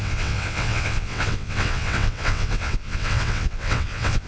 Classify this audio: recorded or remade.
remade